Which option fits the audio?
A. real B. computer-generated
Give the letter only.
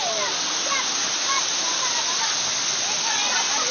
A